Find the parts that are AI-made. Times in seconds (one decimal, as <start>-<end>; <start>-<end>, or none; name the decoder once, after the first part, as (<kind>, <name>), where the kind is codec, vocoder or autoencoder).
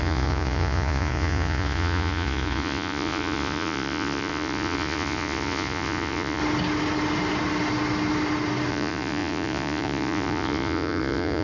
0.0-6.4 (vocoder, Vocos); 8.7-11.4